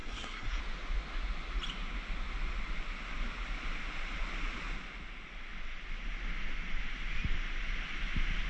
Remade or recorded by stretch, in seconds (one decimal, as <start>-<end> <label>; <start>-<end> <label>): 0.0-0.6 remade; 0.6-8.5 recorded